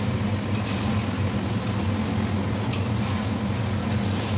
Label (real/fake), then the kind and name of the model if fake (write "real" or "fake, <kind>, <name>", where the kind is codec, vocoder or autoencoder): real